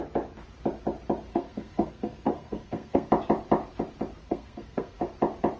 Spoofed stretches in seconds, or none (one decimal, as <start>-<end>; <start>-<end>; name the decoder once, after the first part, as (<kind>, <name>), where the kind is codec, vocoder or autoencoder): 1.3-3.1 (codec, SNAC); 4.2-5.1